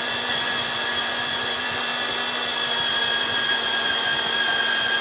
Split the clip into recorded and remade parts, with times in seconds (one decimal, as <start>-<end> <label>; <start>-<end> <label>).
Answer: 0.0-1.9 remade; 1.9-3.2 recorded; 3.2-4.1 remade; 4.1-4.6 recorded; 4.6-5.0 remade